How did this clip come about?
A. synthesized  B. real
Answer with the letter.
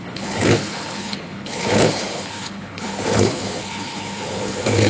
A